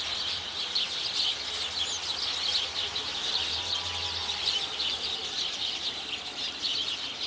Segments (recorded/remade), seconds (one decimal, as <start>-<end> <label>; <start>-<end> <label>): 0.0-1.3 remade; 1.3-2.6 recorded; 2.6-7.3 remade